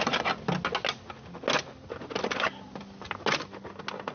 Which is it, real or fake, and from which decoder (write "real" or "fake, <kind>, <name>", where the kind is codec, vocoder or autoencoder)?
real